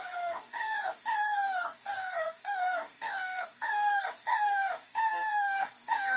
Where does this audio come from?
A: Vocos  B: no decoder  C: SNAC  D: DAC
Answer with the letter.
D